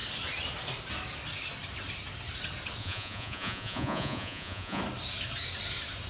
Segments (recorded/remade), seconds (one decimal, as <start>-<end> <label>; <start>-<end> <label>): 0.0-2.8 recorded; 2.8-4.8 remade; 4.8-6.1 recorded